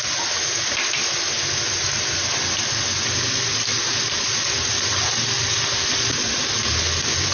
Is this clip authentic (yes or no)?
yes